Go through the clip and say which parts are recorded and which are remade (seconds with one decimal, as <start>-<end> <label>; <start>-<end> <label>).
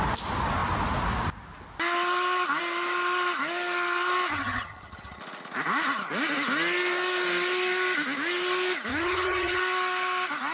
0.0-4.3 recorded; 4.3-5.2 remade; 5.2-8.9 recorded; 8.9-9.6 remade; 9.6-10.5 recorded